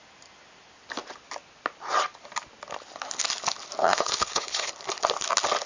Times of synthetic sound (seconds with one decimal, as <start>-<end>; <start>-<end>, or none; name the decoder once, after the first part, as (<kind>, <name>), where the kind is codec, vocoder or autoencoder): 3.8-4.7 (codec, HILCodec)